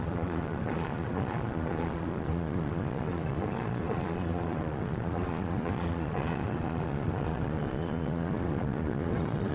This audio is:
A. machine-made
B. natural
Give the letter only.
A